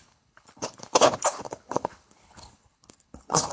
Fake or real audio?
fake